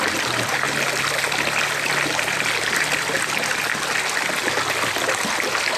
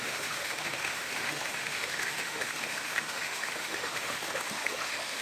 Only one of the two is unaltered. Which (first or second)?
first